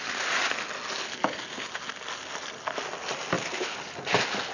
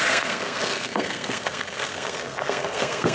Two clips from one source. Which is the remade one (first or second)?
second